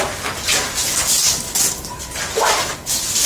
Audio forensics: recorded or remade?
recorded